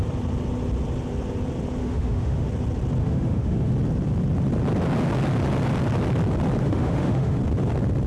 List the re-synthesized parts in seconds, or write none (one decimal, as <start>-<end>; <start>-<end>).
1.8-2.5; 3.0-3.7; 6.6-7.4